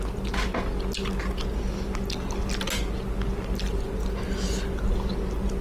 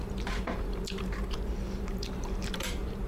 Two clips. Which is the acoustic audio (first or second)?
first